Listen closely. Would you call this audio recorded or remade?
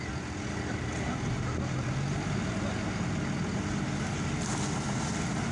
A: recorded